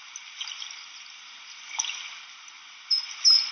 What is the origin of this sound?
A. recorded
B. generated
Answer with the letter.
A